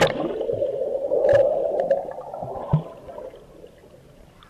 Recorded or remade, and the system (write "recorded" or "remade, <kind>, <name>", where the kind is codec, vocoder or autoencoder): recorded